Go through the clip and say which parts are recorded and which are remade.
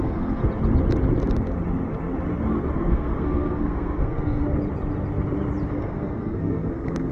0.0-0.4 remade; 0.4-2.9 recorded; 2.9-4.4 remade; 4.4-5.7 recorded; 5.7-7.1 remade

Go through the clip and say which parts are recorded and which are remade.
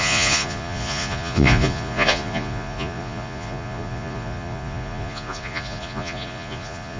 0.0-7.0 remade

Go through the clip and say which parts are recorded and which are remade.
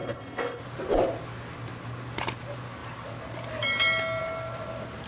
0.0-0.6 remade; 0.6-5.1 recorded